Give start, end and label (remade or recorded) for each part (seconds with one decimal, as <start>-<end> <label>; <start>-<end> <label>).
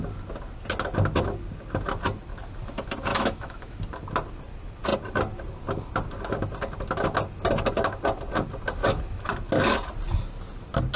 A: 0.0-3.1 recorded; 3.1-3.8 remade; 3.8-8.8 recorded; 8.8-9.3 remade; 9.3-11.0 recorded